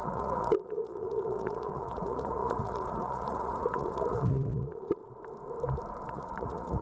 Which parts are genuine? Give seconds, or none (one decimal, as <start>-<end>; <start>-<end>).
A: 5.0-6.1